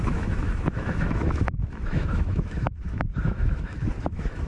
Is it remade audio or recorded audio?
remade